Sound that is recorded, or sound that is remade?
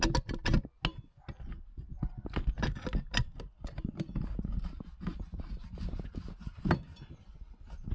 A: recorded